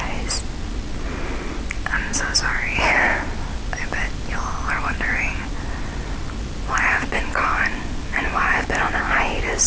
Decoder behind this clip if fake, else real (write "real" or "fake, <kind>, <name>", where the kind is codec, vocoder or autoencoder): real